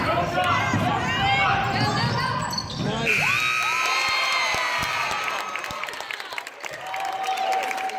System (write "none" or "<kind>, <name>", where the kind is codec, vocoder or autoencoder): none